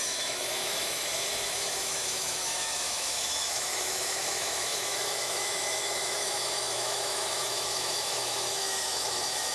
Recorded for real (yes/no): no